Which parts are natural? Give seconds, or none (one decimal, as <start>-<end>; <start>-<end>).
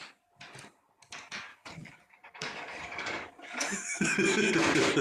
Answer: 0.0-1.5; 4.5-5.0